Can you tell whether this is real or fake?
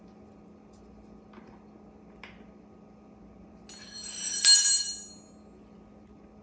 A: real